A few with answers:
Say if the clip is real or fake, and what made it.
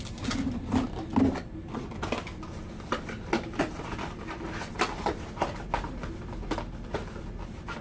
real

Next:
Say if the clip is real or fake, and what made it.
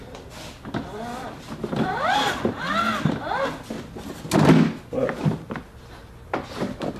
real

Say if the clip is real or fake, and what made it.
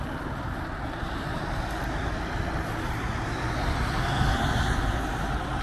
real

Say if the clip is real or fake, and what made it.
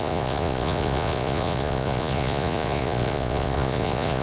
fake, vocoder, Vocos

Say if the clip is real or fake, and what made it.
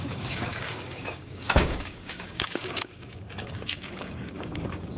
fake, codec, DAC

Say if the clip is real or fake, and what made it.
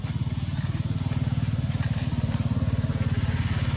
real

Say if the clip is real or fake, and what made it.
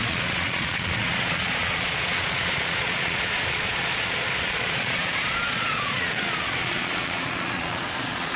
fake, vocoder, Vocos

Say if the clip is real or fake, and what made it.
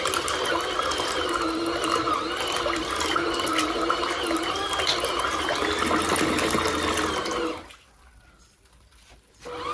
real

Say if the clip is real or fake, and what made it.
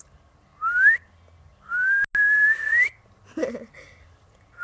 real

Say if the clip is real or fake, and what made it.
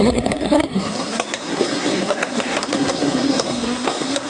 fake, codec, SNAC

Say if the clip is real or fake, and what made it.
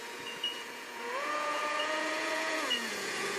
fake, vocoder, Vocos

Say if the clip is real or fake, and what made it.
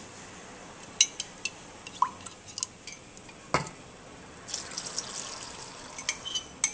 real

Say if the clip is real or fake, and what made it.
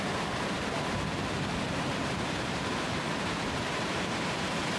fake, vocoder, BigVGAN v2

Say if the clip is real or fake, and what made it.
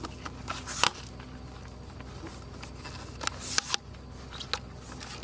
real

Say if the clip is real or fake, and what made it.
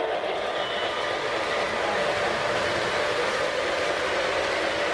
real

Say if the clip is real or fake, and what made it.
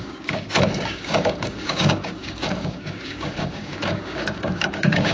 fake, codec, DAC